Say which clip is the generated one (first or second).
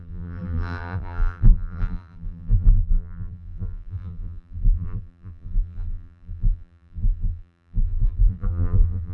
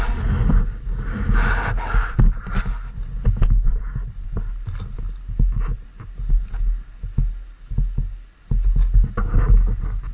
first